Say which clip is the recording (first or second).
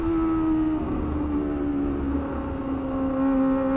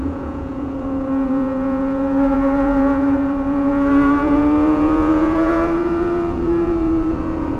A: first